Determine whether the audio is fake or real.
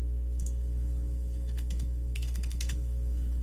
fake